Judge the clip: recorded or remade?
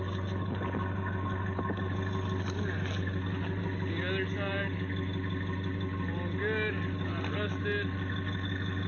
recorded